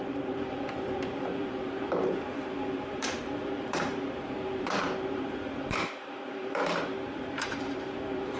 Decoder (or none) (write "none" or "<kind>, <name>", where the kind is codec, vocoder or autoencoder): vocoder, BigVGAN v2